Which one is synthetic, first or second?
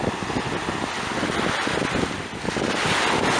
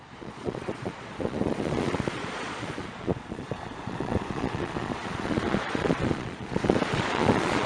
second